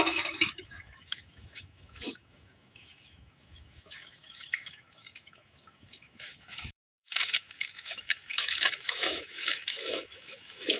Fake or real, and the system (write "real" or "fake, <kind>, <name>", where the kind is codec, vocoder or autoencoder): fake, autoencoder, DAC-VAE